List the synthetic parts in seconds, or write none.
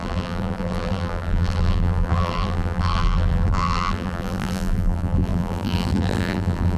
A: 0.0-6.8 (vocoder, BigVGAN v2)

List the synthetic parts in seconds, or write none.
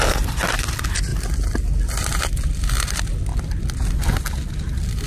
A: 0.0-1.1 (vocoder, BigVGAN v2); 1.9-3.3